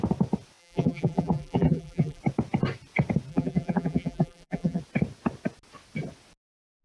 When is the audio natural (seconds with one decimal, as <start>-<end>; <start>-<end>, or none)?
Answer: 0.0-0.6; 2.2-3.3; 4.8-6.8